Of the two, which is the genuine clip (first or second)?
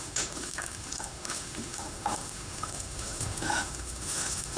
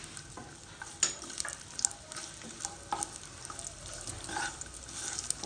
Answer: second